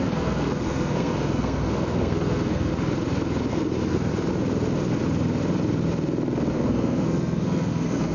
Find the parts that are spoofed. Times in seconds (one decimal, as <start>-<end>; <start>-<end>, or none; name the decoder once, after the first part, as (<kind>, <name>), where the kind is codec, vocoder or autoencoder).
0.0-2.7 (codec, SNAC); 3.5-4.1; 6.5-8.1